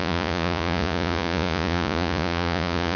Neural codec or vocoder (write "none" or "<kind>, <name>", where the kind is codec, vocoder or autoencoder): vocoder, Vocos